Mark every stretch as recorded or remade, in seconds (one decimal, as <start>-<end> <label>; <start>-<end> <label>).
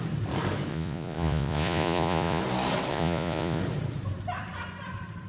0.0-0.7 recorded; 0.7-2.4 remade; 2.4-2.9 recorded; 2.9-3.6 remade; 3.6-5.3 recorded